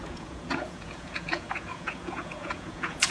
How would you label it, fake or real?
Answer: fake